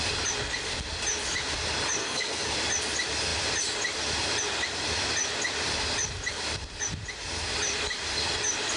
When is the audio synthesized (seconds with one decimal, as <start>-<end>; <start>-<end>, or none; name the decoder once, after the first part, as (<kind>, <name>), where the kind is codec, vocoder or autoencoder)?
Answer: 2.0-2.5 (codec, SNAC)